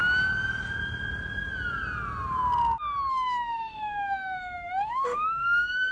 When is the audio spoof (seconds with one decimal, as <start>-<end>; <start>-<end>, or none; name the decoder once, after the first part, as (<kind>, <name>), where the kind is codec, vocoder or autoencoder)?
3.1-5.9 (autoencoder, DAC-VAE)